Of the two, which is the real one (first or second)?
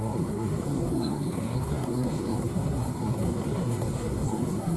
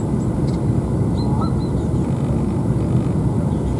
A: second